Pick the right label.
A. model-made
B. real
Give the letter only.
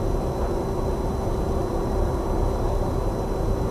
B